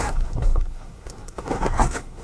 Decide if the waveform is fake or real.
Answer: fake